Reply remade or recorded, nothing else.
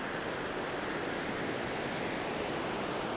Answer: recorded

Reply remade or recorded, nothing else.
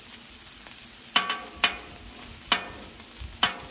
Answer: recorded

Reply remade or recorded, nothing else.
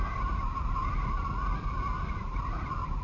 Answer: recorded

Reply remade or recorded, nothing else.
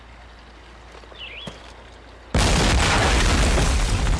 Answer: recorded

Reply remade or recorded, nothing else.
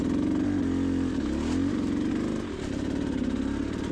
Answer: recorded